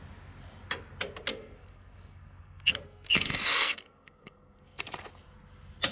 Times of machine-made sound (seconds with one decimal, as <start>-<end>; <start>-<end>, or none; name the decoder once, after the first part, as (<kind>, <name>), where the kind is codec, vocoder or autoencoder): 1.3-4.8 (codec, SNAC)